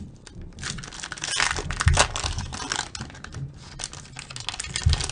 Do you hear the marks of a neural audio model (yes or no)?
no